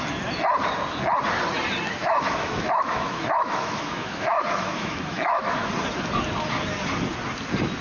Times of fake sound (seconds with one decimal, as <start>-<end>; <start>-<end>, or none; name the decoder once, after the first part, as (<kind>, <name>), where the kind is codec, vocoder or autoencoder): 2.0-5.7 (autoencoder, DAC-VAE)